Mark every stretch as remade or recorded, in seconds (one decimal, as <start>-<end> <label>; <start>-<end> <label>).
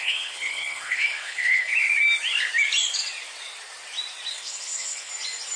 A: 0.0-1.7 remade; 1.7-4.3 recorded; 4.3-5.1 remade; 5.1-5.6 recorded